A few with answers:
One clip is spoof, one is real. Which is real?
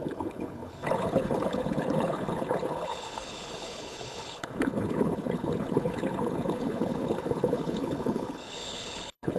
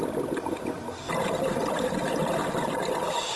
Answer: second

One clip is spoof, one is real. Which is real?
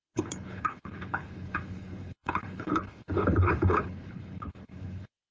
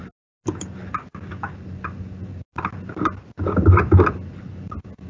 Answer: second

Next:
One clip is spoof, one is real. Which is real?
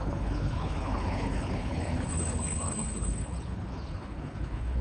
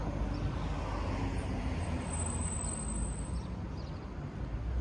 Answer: second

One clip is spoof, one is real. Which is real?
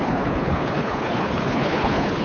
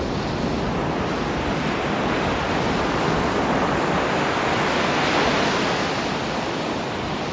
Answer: second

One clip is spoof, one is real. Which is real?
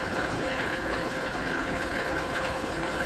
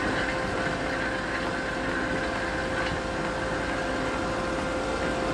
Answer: second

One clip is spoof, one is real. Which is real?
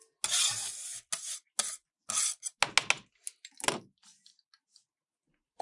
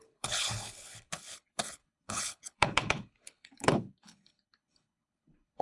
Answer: first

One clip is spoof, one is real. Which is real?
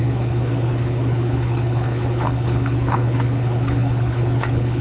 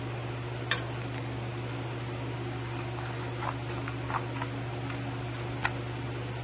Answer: second